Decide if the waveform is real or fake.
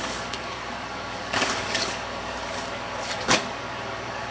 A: fake